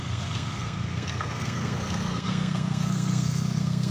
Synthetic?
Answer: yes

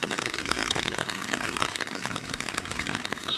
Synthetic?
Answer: yes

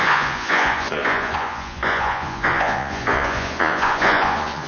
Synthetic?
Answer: yes